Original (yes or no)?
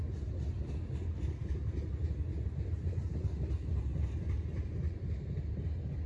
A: yes